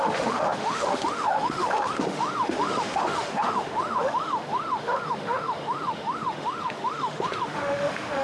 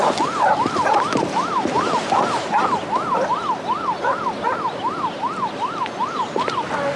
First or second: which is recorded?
second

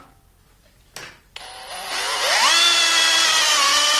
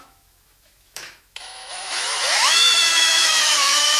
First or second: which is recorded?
first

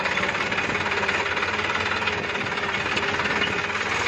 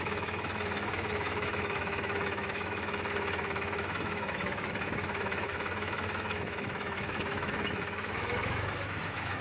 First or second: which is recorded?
first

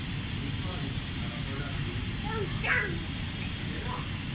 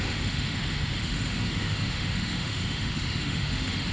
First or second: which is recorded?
first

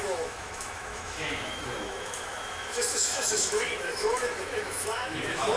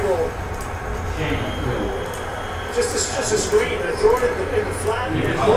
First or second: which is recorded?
second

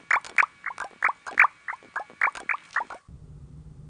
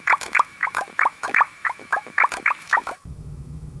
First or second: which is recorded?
first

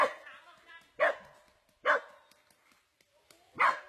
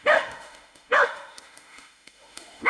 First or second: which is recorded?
first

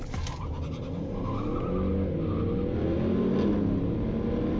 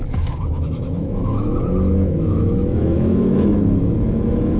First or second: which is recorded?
first